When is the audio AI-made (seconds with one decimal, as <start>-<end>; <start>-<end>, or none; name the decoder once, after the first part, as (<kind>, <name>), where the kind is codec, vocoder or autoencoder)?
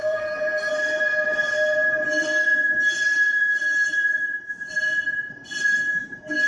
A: 0.0-0.7 (codec, SNAC)